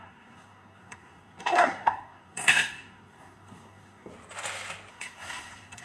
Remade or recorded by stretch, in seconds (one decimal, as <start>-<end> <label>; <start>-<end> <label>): 0.0-4.1 remade; 4.1-4.9 recorded; 4.9-5.8 remade